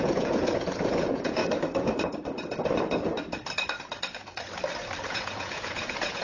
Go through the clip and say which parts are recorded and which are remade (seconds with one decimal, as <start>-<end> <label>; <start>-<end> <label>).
0.0-1.4 remade; 1.4-5.1 recorded; 5.1-6.2 remade